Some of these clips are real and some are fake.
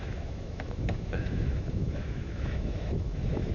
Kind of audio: fake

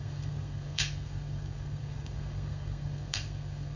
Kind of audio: fake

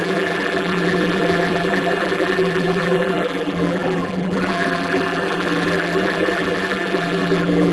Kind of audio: fake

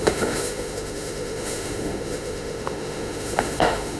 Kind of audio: fake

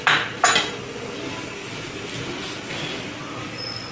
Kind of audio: real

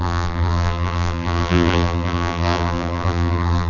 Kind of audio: fake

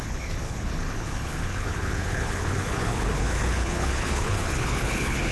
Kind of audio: fake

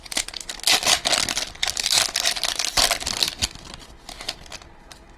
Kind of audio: real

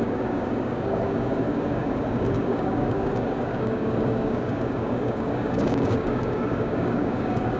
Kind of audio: fake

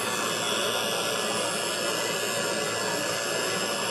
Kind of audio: real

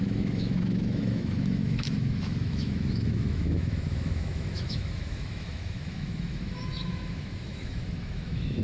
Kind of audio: fake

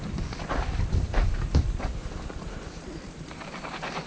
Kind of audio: real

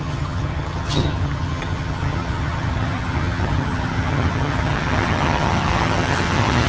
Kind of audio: fake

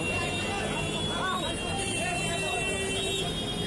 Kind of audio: real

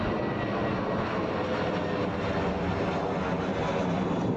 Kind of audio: real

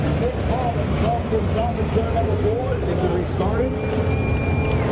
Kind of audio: real